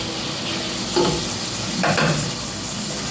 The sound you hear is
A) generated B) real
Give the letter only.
B